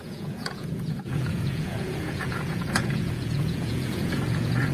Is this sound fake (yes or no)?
yes